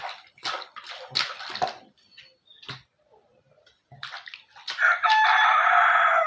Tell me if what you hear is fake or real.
real